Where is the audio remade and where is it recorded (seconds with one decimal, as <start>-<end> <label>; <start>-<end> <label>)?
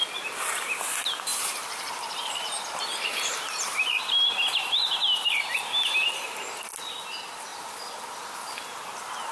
0.0-1.3 recorded; 1.3-4.0 remade; 4.0-9.3 recorded